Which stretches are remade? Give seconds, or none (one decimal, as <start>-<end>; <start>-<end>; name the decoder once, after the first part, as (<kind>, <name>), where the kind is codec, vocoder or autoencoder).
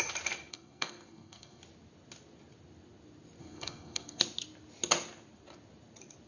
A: 0.5-1.6 (codec, SNAC); 3.4-4.2